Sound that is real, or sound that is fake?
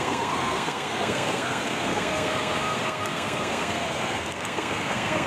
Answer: fake